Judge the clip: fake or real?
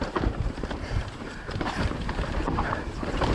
fake